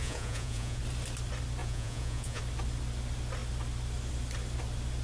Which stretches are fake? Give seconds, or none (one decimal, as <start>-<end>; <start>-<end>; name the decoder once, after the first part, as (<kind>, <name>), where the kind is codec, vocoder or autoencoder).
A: 0.0-0.8 (vocoder, Vocos); 1.6-2.4